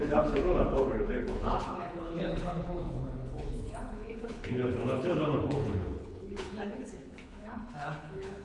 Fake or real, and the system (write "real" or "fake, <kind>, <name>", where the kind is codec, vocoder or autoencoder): fake, codec, HILCodec